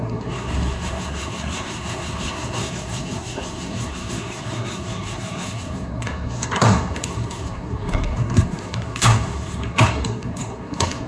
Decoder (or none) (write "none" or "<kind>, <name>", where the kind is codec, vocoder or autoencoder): codec, SNAC